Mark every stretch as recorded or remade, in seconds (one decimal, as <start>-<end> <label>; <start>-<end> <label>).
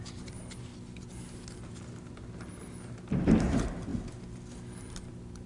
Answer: 0.0-0.7 remade; 0.7-3.4 recorded; 3.4-3.9 remade; 3.9-4.8 recorded; 4.8-5.5 remade